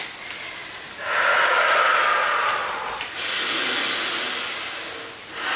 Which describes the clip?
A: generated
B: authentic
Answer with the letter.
B